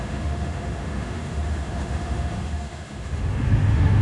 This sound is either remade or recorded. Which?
remade